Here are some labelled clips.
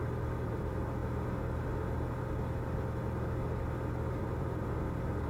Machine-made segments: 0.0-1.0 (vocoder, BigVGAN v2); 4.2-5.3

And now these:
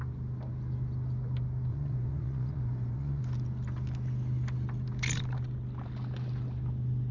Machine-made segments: 1.7-3.2 (vocoder, Vocos)